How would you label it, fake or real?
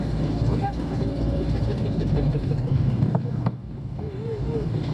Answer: fake